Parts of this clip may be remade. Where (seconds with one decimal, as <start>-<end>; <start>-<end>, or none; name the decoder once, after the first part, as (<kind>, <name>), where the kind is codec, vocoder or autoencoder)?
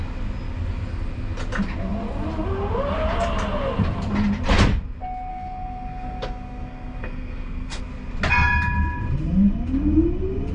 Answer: 5.3-7.8 (codec, SNAC)